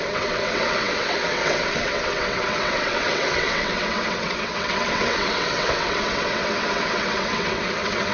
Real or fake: fake